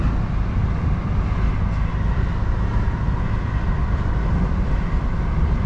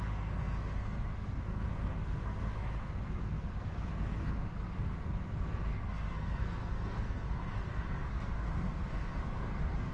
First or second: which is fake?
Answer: second